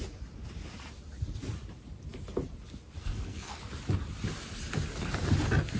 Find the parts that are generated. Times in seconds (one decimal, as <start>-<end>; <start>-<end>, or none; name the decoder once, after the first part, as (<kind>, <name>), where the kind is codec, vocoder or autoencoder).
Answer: 3.0-3.6 (codec, SNAC)